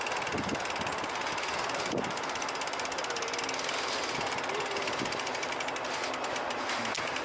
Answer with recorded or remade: recorded